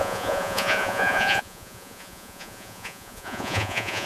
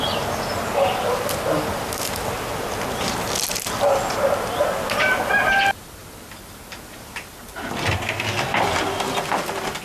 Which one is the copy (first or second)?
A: first